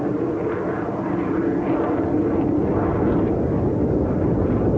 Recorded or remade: recorded